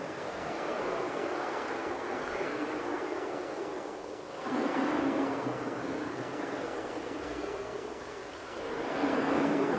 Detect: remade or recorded remade